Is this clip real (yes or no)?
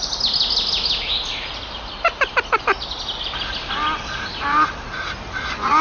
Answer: yes